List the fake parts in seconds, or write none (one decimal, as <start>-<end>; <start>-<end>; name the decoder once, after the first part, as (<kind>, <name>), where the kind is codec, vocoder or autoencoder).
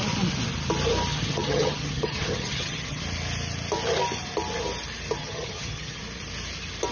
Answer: 1.1-3.0 (vocoder, HiFi-GAN); 5.2-6.0